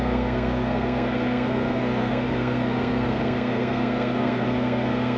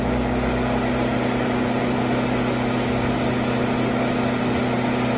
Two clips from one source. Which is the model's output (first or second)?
first